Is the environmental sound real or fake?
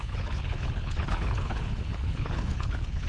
fake